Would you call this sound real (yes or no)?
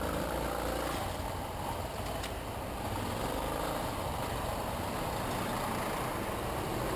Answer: yes